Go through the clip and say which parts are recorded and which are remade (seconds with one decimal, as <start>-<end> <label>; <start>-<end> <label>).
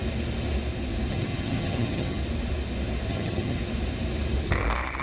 0.0-1.1 recorded; 1.1-2.2 remade; 2.2-3.1 recorded; 3.1-3.6 remade; 3.6-5.0 recorded